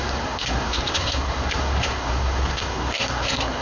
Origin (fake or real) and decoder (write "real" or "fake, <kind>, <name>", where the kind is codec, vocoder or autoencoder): fake, codec, SNAC